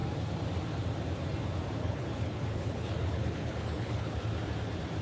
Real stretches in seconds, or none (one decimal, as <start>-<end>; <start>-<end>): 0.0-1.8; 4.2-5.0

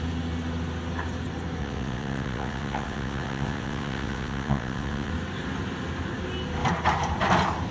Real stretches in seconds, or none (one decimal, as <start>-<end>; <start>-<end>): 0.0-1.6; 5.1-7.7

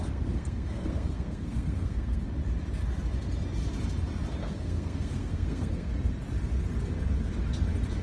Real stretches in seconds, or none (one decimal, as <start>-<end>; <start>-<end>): 2.2-4.4; 5.9-8.0

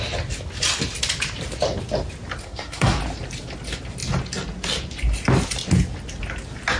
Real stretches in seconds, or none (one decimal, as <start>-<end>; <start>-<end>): 0.0-2.4; 3.0-6.8